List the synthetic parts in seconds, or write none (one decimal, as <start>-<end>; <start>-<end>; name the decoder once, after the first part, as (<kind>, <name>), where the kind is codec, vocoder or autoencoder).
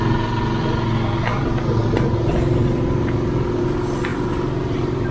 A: 4.1-5.1 (vocoder, BigVGAN v2)